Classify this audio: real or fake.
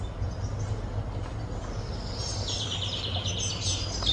real